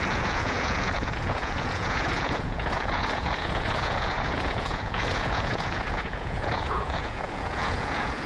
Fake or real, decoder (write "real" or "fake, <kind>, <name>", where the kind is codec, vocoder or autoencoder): fake, vocoder, Vocos